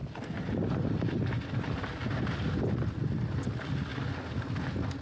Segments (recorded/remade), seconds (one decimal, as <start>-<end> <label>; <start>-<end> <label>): 0.0-5.0 recorded